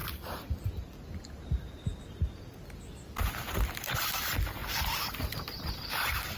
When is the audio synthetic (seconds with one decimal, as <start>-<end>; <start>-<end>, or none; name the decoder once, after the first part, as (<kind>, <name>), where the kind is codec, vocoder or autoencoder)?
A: none